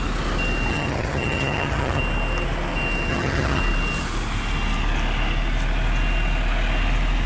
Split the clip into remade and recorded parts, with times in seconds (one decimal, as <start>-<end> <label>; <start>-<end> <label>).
0.0-0.7 recorded; 0.7-2.0 remade; 2.0-3.1 recorded; 3.1-3.6 remade; 3.6-7.3 recorded